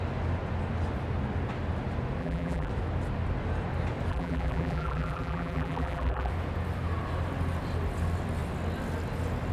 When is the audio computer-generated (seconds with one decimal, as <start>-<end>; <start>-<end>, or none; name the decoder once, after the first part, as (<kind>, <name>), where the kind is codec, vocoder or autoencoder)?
2.2-2.7 (vocoder, BigVGAN v2); 4.1-6.3